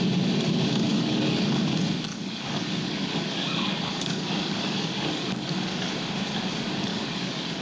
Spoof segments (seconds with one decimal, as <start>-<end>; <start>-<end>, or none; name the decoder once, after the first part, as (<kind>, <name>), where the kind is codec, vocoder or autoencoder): 0.9-1.7 (codec, DAC); 2.1-5.9; 6.9-7.6